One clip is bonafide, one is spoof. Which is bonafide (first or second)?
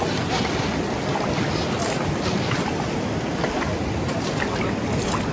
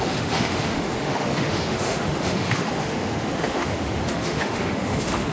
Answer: first